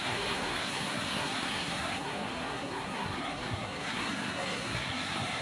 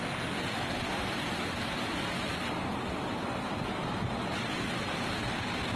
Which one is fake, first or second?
first